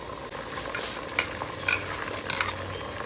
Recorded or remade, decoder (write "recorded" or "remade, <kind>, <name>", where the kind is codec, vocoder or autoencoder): recorded